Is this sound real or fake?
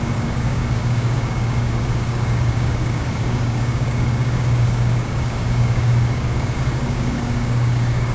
fake